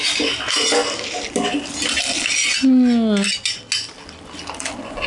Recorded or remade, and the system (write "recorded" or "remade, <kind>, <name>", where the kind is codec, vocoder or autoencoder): recorded